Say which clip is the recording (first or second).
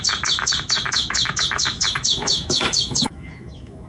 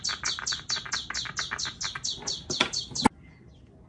second